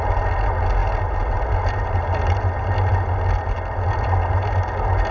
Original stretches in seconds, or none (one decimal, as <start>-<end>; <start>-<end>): 0.0-5.1